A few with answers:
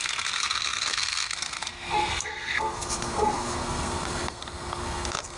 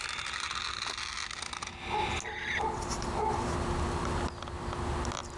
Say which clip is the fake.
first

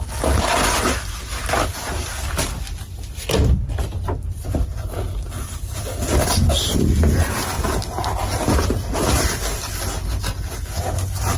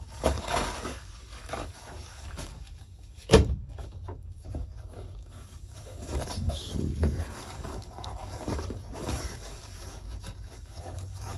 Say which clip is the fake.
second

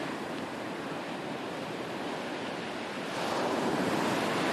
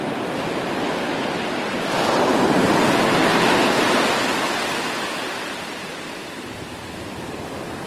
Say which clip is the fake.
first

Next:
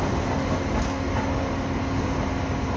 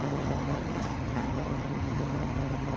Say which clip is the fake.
second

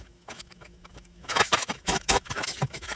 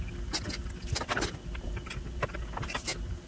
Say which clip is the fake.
first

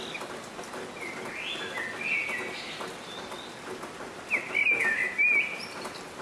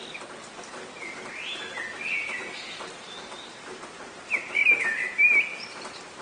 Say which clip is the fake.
second